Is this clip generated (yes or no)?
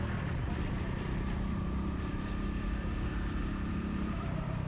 yes